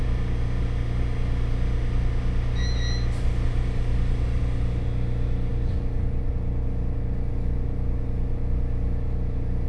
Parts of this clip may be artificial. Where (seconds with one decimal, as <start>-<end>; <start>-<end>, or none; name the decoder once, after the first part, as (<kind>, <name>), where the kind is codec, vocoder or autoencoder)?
none